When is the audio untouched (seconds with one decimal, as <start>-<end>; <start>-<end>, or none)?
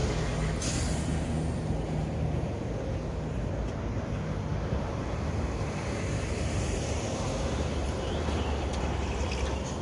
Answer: 0.0-4.5; 9.3-9.8